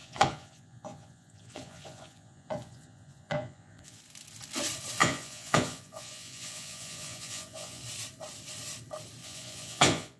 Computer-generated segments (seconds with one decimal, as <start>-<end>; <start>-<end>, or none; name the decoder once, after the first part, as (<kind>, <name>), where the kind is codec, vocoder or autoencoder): 0.0-4.0 (vocoder, Vocos); 5.0-7.8; 9.2-10.2